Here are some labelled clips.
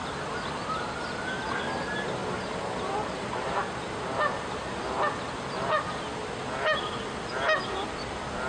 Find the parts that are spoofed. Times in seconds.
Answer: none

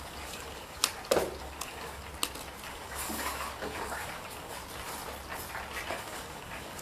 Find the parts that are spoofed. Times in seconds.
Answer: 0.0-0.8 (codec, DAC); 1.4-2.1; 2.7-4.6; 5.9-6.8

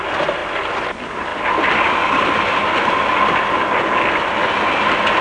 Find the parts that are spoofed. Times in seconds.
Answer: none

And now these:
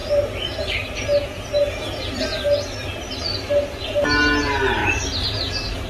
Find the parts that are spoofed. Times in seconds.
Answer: 4.8-5.5 (vocoder, BigVGAN v2)

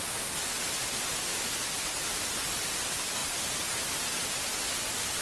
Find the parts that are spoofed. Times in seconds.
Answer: 0.8-2.7 (vocoder, BigVGAN v2)

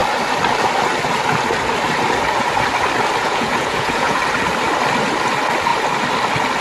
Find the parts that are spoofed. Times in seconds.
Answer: 3.2-4.2 (vocoder, Vocos)